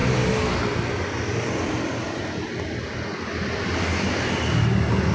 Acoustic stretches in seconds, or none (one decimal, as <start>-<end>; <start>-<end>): 0.0-5.1